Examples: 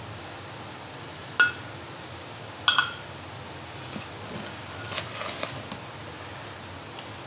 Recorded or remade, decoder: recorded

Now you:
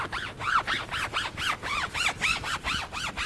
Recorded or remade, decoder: recorded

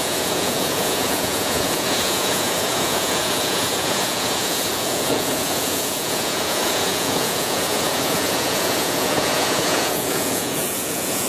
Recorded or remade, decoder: remade, vocoder, Vocos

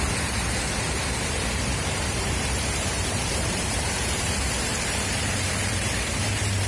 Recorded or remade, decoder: remade, vocoder, BigVGAN v2